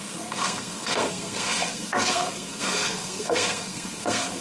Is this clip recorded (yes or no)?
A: no